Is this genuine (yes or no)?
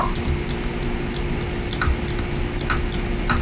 yes